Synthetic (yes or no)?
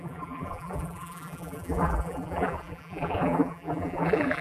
yes